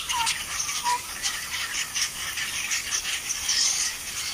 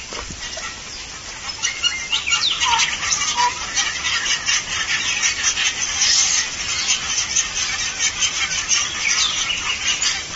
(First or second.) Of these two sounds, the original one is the second